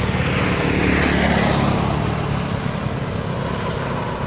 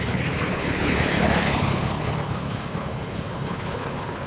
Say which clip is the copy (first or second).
second